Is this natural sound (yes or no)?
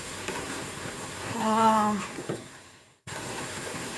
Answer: no